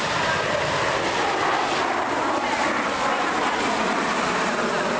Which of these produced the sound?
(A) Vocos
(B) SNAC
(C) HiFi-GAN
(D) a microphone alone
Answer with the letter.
D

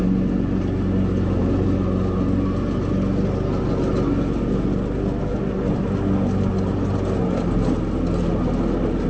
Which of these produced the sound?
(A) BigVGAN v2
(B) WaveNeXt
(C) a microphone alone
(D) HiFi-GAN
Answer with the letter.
C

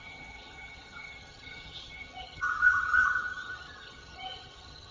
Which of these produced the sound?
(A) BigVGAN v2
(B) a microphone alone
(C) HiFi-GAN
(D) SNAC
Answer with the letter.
C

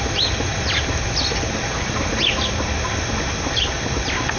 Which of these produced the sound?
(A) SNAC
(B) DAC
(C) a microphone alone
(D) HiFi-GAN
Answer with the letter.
C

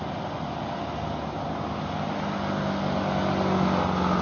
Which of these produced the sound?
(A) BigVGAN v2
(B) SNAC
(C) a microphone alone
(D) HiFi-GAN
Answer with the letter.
C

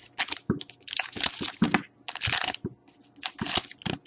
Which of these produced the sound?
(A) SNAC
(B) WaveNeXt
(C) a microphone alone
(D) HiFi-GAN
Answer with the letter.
C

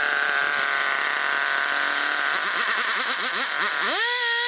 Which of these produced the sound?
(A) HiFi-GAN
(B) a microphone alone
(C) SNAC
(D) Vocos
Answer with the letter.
B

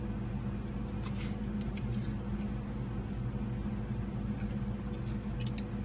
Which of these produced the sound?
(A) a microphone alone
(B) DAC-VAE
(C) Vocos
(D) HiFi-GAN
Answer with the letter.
A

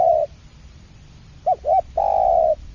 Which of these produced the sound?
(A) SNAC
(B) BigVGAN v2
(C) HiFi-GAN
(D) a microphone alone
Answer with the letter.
D